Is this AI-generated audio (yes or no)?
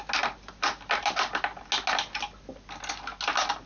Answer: no